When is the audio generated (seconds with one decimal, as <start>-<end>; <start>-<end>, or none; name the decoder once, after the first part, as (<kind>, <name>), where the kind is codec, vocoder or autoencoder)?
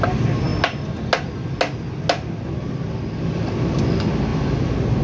none